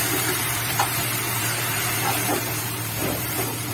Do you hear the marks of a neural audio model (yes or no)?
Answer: yes